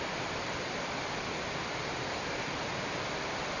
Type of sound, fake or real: fake